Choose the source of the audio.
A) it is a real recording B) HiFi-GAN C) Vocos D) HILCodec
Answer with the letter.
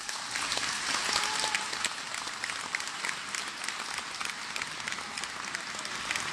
A